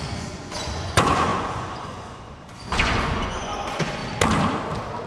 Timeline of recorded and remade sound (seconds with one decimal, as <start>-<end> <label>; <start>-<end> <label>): 0.0-4.0 remade; 4.0-5.1 recorded